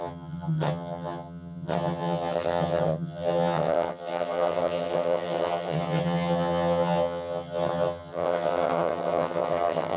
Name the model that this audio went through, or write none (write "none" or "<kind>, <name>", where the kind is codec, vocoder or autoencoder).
vocoder, HiFi-GAN